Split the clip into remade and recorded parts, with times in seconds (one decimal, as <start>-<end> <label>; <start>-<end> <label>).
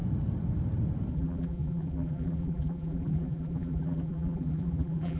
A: 0.0-1.1 recorded; 1.1-5.2 remade